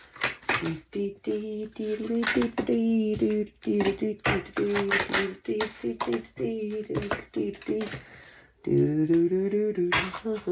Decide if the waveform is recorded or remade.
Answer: recorded